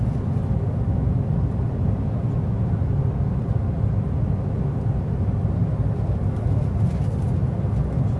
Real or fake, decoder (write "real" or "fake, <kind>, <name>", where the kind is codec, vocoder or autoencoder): real